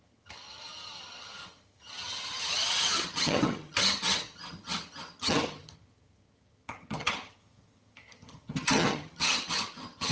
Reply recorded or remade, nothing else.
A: remade